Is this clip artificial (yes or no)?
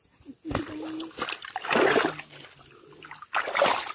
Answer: no